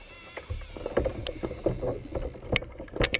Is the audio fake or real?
real